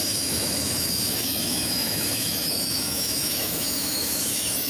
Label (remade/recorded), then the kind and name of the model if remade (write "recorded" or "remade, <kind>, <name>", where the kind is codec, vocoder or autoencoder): remade, autoencoder, DAC-VAE